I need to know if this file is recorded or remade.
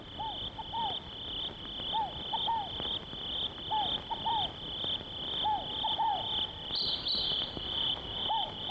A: remade